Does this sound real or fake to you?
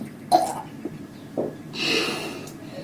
real